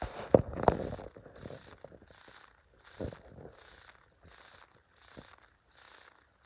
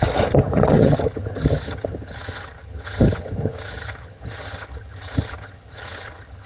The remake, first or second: second